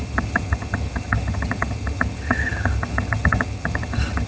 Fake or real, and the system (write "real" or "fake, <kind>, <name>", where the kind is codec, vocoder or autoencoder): fake, vocoder, HiFi-GAN